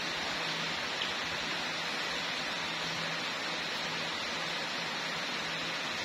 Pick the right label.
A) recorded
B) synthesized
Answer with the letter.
A